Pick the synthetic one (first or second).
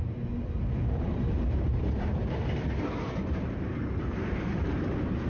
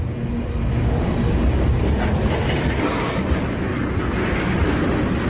first